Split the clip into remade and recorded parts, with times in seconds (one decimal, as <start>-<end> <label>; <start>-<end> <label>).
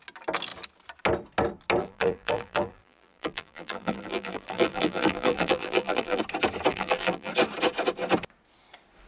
0.0-1.8 recorded; 1.8-6.2 remade; 6.2-6.7 recorded; 6.7-7.3 remade; 7.3-9.1 recorded